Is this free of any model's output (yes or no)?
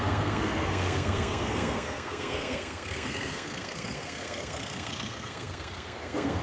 no